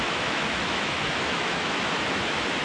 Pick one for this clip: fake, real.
fake